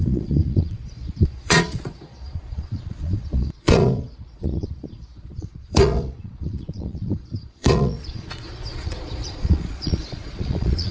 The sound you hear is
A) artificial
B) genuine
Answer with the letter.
A